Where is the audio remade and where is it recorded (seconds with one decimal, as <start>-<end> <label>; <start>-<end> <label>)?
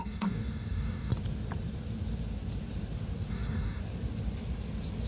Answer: 0.0-1.1 remade; 1.1-3.3 recorded; 3.3-3.8 remade; 3.8-5.1 recorded